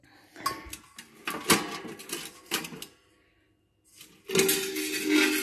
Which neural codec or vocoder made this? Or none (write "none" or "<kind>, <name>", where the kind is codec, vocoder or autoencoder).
none